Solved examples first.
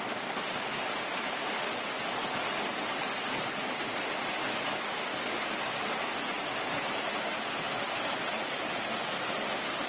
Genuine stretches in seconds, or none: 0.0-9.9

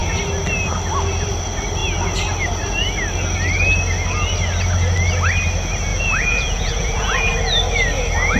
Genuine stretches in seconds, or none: 0.0-5.9; 7.3-8.4

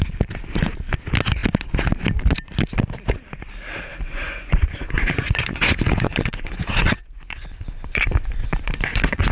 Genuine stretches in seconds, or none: 0.0-3.9

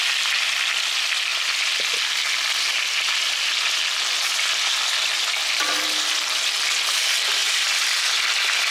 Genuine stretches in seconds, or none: 0.0-8.7

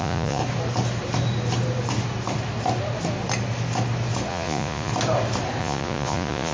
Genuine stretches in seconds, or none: 0.4-4.3; 4.9-5.6

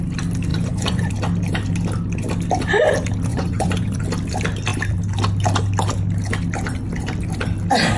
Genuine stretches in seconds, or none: 0.0-0.5; 1.1-3.3; 4.0-8.0

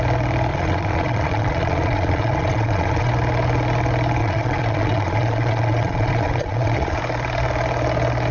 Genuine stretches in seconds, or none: 0.0-0.5; 3.1-4.2; 7.0-8.3

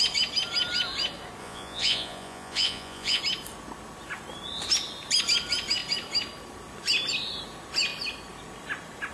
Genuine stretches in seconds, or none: 0.0-1.4; 3.2-9.1